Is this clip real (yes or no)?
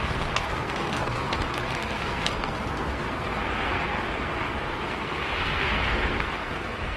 no